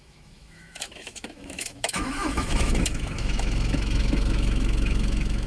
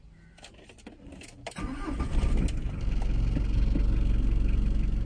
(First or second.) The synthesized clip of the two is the first